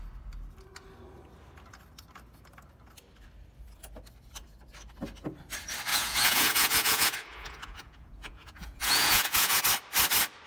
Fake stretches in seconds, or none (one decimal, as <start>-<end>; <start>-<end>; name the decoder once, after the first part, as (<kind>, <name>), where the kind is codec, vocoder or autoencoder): 5.9-9.6 (vocoder, Vocos)